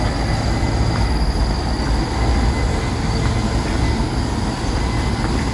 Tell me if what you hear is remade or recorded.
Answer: recorded